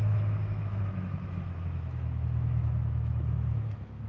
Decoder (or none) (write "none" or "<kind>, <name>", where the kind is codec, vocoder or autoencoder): autoencoder, DAC-VAE